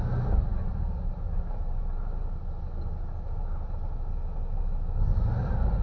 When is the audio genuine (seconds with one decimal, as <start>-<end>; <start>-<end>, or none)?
0.0-5.8